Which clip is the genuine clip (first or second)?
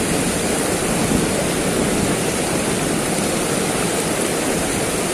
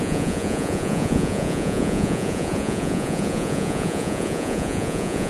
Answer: first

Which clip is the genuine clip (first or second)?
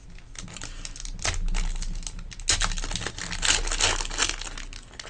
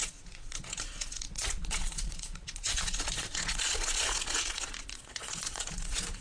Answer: first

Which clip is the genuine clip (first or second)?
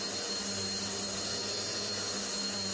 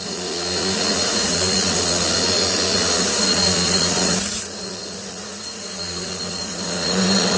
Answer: first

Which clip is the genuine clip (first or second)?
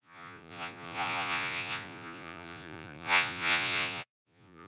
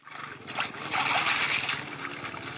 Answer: second